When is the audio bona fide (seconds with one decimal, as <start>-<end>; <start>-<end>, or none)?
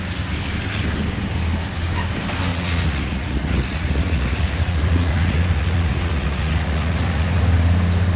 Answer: 0.0-2.5; 7.4-8.2